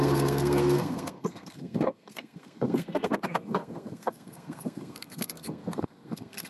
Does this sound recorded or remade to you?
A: remade